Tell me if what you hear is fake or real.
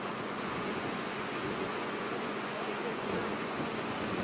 fake